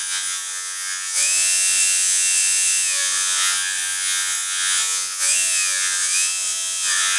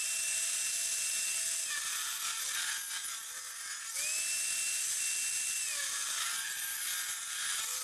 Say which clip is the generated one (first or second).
first